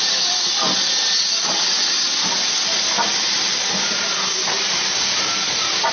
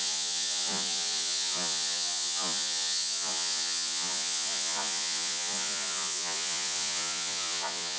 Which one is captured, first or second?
first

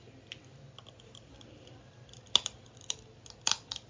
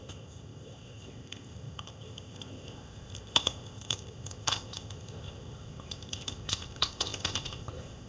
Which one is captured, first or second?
first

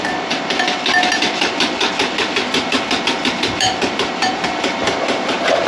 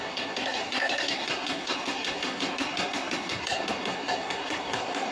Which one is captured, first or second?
first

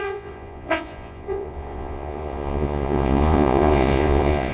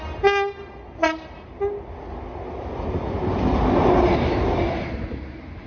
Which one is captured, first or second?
second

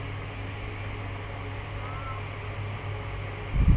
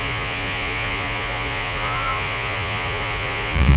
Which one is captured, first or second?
first